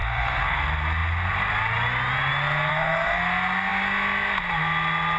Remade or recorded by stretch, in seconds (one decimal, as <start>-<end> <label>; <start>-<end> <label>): 0.0-0.6 remade; 0.6-2.7 recorded; 2.7-3.2 remade; 3.2-5.2 recorded